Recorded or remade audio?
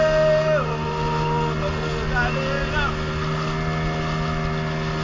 recorded